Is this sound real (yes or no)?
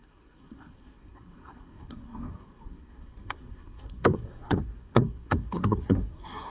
no